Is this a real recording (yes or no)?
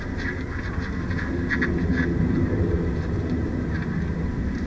yes